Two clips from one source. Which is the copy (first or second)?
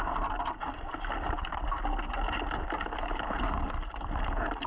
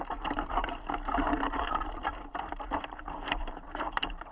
second